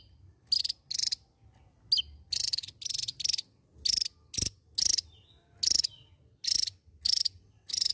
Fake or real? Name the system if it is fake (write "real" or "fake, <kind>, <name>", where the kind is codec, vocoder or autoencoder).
real